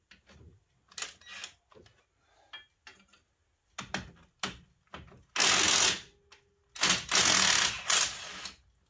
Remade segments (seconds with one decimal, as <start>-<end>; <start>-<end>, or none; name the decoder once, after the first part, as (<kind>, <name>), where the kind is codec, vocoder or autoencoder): none